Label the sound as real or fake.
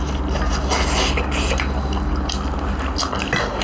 real